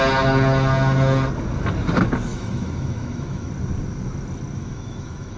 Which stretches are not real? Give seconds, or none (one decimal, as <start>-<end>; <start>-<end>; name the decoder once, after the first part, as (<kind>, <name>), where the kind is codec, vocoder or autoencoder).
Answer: 2.3-3.5 (autoencoder, DAC-VAE); 4.6-5.4